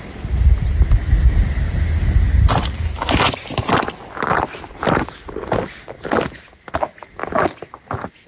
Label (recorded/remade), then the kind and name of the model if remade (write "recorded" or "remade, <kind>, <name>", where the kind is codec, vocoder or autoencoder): recorded